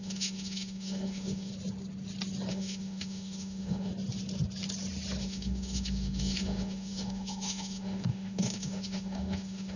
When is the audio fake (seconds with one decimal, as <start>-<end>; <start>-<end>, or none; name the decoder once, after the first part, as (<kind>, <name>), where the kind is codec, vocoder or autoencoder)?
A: 0.0-1.5 (autoencoder, DAC-VAE); 2.5-3.9; 5.2-9.8